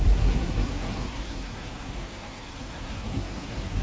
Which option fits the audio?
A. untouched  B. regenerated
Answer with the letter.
B